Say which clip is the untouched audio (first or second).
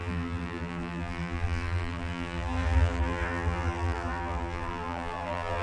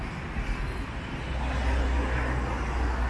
second